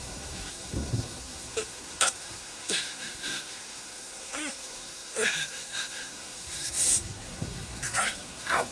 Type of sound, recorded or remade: remade